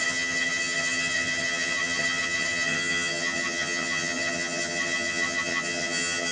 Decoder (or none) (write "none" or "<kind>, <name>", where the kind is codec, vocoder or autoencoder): vocoder, HiFi-GAN